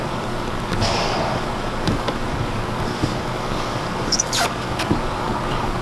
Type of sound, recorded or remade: remade